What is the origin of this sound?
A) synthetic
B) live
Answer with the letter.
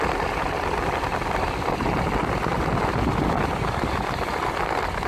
B